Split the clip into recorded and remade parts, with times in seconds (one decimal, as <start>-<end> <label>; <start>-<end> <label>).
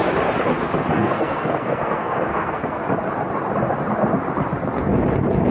0.0-0.9 recorded; 0.9-2.8 remade; 2.8-5.5 recorded